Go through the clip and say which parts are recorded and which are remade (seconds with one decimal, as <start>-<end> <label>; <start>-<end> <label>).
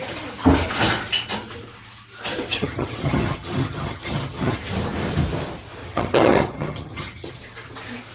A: 0.0-2.5 recorded; 2.5-4.6 remade; 4.6-5.8 recorded; 5.8-7.4 remade; 7.4-8.1 recorded